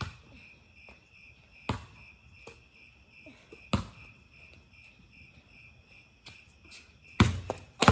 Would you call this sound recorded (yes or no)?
yes